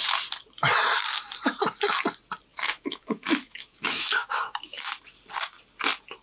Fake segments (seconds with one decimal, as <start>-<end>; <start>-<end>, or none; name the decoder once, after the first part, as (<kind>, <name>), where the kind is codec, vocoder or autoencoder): 2.5-4.9 (autoencoder, DAC-VAE)